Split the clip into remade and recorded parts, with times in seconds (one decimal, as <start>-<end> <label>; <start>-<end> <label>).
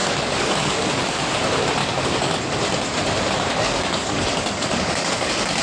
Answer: 0.0-1.2 remade; 1.2-1.8 recorded; 1.8-2.4 remade; 2.4-3.5 recorded; 3.5-5.6 remade